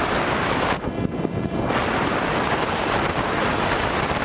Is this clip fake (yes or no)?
no